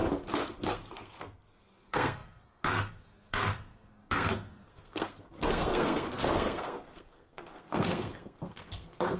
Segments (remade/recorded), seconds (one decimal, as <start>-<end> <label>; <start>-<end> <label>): 0.0-0.6 recorded; 0.6-9.2 remade